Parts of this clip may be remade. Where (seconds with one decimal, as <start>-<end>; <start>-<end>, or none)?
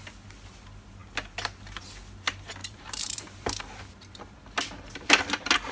2.6-3.6